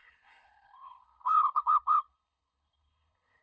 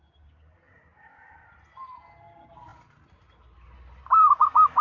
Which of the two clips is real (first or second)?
second